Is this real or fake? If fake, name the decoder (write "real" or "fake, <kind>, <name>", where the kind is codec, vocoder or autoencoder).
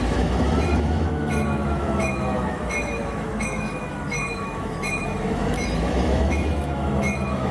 fake, autoencoder, DAC-VAE